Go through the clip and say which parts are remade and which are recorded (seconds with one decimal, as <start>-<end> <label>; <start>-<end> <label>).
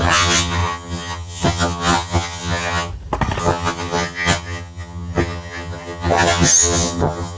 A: 0.0-2.9 remade; 2.9-3.4 recorded; 3.4-7.4 remade